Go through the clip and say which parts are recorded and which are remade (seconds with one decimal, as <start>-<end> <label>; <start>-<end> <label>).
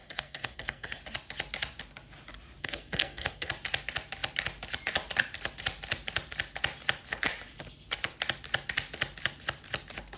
0.0-1.0 remade; 1.0-2.6 recorded; 2.6-3.5 remade; 3.5-10.2 recorded